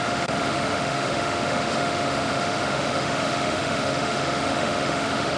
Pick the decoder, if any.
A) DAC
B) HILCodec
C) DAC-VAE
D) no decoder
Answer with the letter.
C